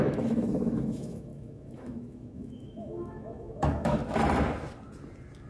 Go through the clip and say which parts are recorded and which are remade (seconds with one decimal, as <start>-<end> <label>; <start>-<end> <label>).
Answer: 0.0-4.0 remade; 4.0-5.5 recorded